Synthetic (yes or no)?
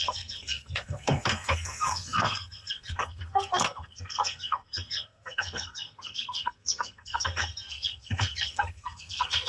yes